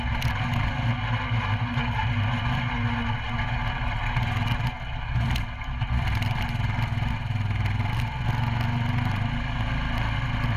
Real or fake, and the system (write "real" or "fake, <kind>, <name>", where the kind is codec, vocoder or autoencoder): real